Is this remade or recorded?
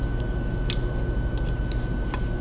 recorded